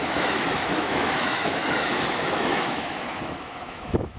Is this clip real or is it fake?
fake